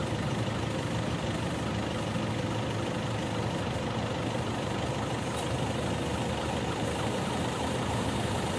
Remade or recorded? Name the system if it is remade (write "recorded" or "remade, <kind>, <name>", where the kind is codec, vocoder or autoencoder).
recorded